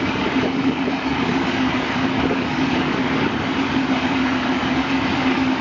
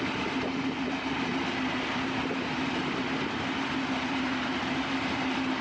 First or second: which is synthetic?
first